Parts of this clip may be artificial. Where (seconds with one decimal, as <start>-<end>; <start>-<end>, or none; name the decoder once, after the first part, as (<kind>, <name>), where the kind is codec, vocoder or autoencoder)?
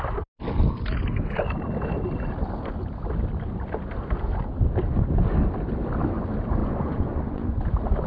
6.6-7.6 (vocoder, Vocos)